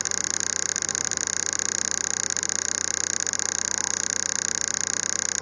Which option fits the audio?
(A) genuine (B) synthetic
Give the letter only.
A